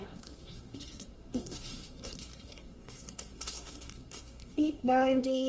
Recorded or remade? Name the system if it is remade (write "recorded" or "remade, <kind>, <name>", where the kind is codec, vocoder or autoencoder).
remade, codec, SNAC